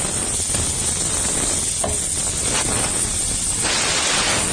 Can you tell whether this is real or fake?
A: real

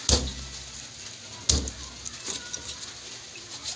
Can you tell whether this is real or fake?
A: real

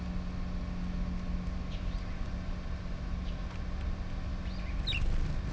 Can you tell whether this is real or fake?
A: real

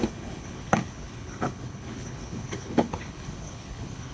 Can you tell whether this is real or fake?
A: fake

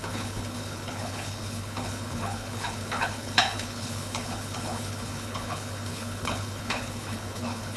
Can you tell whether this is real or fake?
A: fake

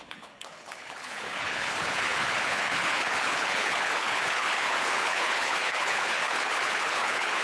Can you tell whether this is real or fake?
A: fake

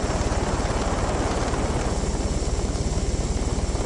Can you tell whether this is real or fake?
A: real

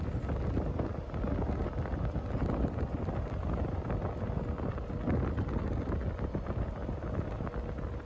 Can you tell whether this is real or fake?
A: real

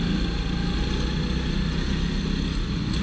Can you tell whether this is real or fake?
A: real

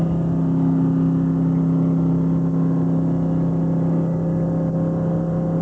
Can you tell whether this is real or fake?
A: real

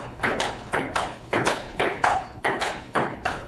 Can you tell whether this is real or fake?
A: fake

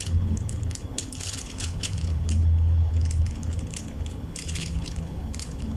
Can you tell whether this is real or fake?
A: fake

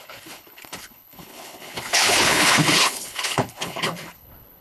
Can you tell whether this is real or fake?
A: fake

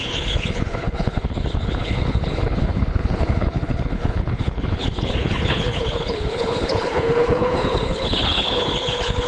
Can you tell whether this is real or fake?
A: fake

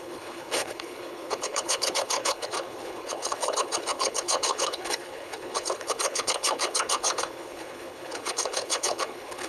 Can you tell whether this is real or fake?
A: fake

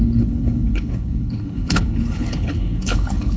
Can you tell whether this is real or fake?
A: fake